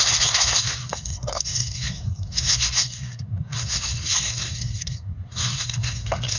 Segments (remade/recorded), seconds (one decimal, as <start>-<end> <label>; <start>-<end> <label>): 0.0-6.4 remade